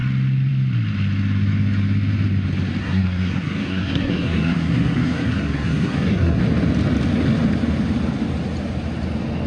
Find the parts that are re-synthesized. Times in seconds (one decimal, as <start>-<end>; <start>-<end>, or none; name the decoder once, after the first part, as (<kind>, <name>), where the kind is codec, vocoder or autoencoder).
2.8-6.4 (codec, SNAC)